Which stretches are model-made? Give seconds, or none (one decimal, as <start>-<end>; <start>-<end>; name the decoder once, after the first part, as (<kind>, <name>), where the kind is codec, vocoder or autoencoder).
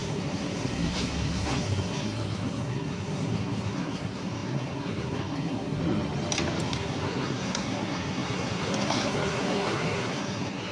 0.0-5.8 (codec, SNAC); 6.6-10.7